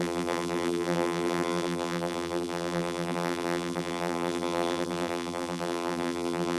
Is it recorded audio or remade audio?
remade